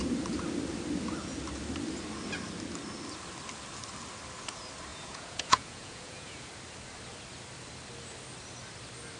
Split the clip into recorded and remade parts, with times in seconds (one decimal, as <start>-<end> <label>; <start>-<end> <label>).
0.0-4.9 recorded; 4.9-6.5 remade; 6.5-9.2 recorded